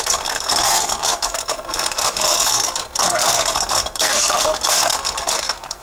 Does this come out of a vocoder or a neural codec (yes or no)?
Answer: yes